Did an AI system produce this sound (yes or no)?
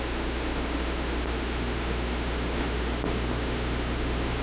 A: yes